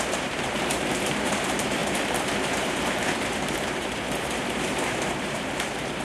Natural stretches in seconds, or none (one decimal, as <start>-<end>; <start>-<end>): none